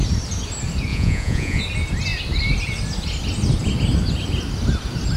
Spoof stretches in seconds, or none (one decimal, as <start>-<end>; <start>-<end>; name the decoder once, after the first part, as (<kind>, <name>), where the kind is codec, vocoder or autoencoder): 0.9-1.6 (vocoder, Vocos)